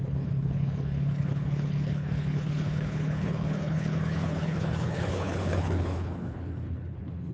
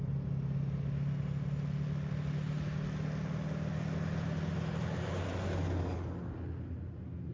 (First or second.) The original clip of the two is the second